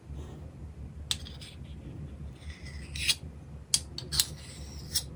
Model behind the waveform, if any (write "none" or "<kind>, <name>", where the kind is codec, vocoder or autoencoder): none